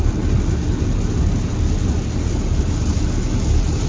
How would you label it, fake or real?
real